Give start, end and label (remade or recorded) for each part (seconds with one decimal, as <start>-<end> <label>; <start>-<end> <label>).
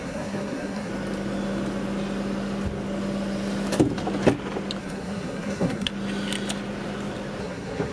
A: 0.0-0.9 remade; 0.9-4.8 recorded; 4.8-5.9 remade; 5.9-7.4 recorded; 7.4-7.9 remade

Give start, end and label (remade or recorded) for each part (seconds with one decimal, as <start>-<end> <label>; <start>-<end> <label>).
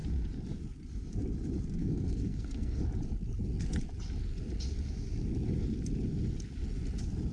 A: 0.0-1.8 recorded; 1.8-2.8 remade; 2.8-7.3 recorded